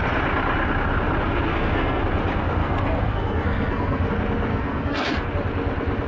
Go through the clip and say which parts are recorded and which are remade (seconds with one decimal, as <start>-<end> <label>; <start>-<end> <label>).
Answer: 0.0-1.5 recorded; 1.5-2.0 remade; 2.0-2.6 recorded; 2.6-4.1 remade; 4.1-4.5 recorded; 4.5-5.3 remade; 5.3-6.1 recorded